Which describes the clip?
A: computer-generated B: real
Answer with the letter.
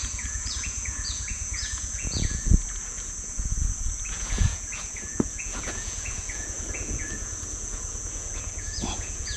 A